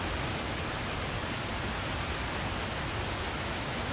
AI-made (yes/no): no